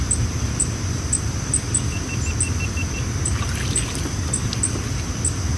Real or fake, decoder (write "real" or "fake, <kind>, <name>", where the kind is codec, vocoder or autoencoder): real